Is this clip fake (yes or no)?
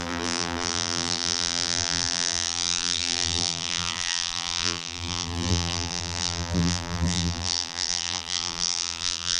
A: yes